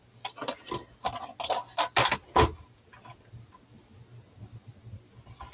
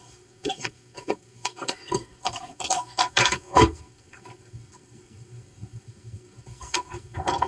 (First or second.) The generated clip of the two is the second